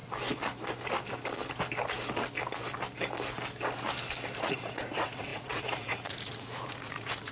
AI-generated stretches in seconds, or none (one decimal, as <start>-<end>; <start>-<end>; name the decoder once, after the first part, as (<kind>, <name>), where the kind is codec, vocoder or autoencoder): 4.4-7.3 (vocoder, Vocos)